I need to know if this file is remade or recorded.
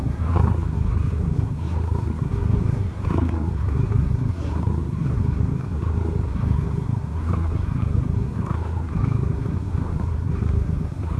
remade